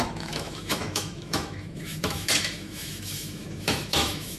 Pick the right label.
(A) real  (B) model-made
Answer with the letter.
B